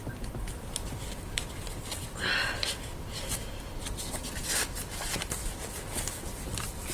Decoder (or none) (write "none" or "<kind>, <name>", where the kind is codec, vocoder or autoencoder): none